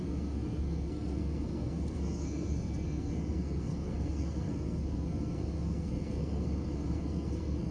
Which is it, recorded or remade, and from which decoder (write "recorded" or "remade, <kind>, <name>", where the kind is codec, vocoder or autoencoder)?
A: remade, codec, SNAC